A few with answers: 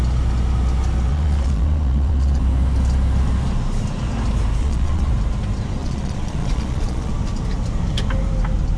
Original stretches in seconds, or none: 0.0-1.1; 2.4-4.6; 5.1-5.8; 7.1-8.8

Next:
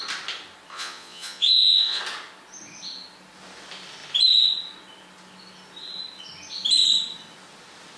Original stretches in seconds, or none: 0.0-0.7; 2.0-8.0

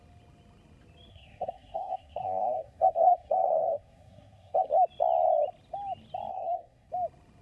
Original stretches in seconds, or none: 0.0-1.1; 4.7-6.3; 6.9-7.4